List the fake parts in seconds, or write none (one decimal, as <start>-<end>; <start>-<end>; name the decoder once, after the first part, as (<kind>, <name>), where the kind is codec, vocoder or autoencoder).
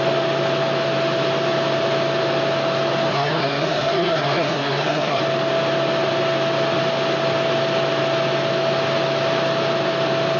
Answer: 3.1-5.2 (codec, SNAC)